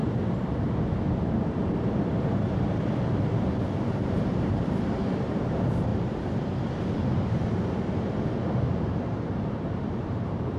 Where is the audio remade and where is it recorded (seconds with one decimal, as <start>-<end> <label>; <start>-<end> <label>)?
0.0-2.3 recorded; 2.3-7.4 remade; 7.4-8.8 recorded; 8.8-10.6 remade